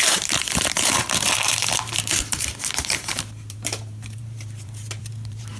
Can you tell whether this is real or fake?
fake